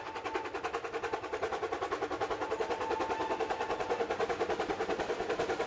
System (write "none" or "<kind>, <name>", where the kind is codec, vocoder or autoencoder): none